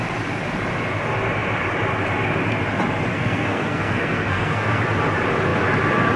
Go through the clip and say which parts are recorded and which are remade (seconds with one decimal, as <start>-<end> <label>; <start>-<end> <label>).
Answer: 0.0-3.1 recorded; 3.1-4.8 remade; 4.8-6.2 recorded